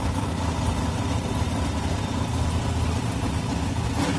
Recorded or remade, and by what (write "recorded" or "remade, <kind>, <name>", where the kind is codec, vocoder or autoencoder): recorded